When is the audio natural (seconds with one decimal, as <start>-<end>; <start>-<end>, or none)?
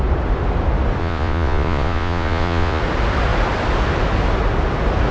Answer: 0.0-1.0; 2.8-5.1